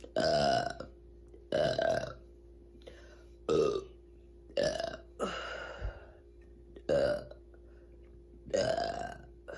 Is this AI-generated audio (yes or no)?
no